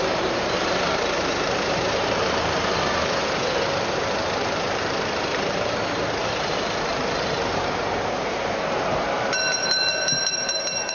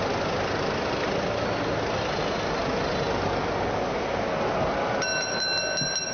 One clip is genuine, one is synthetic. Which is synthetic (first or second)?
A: first